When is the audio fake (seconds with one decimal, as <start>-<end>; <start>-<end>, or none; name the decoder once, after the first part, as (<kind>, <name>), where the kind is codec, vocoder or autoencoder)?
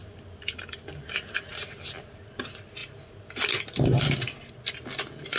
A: 0.0-1.4 (vocoder, BigVGAN v2); 2.8-4.5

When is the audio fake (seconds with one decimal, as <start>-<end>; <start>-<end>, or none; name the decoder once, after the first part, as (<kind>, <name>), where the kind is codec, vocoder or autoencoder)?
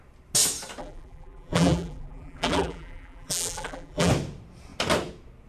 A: 0.8-4.1 (vocoder, BigVGAN v2)